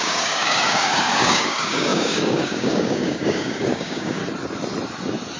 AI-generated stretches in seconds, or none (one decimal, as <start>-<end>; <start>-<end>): 0.0-4.2